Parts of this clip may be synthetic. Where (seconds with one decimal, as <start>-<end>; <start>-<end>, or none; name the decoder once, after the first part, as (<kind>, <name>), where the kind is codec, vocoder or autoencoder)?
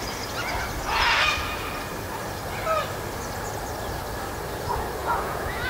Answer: 5.0-5.7 (vocoder, Vocos)